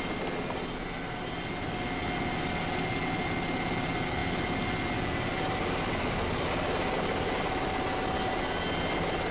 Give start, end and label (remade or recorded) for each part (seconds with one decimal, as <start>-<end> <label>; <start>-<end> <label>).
0.0-9.3 recorded